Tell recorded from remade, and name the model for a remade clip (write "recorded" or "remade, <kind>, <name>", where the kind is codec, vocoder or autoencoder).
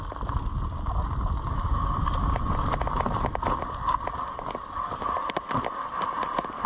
recorded